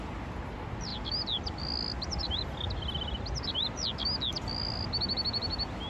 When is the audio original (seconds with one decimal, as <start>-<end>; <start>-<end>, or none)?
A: 0.0-5.9